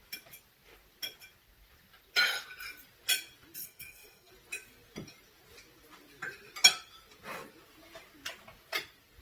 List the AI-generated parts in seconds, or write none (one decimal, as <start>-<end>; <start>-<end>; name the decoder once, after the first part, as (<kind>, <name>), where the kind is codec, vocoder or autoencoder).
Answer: 3.6-4.3 (codec, SNAC)